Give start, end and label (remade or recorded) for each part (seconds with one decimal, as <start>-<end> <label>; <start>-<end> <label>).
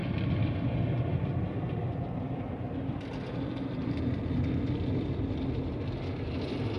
0.0-6.8 recorded